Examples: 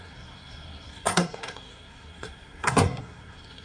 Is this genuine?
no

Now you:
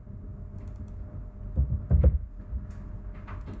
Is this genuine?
yes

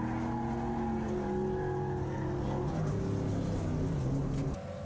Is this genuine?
yes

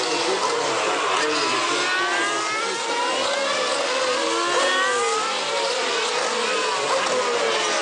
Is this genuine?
yes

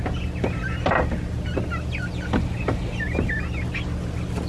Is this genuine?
yes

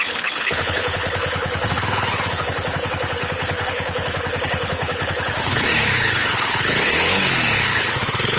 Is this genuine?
no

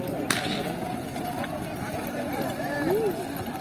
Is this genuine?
yes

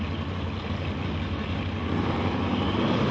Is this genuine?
yes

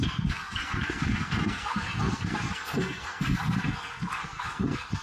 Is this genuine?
no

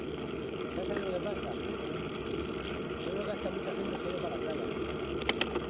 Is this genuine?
yes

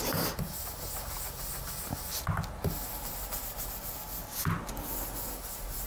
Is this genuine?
yes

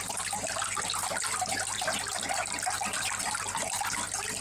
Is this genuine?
yes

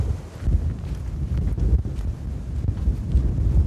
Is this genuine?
yes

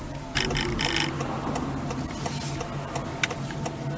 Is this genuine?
yes